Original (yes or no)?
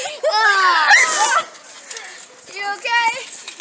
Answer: yes